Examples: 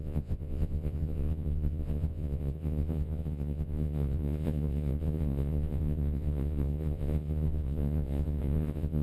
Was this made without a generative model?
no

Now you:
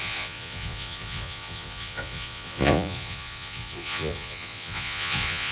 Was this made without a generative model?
no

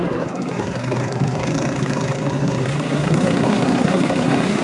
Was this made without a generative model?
no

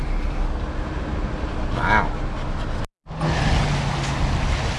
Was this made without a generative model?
yes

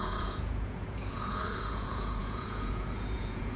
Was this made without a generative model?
no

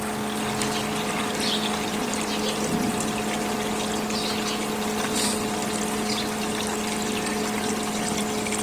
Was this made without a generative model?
yes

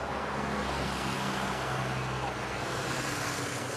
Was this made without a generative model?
no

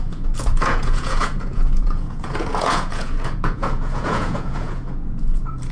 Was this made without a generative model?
no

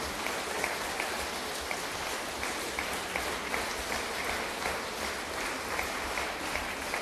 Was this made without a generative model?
yes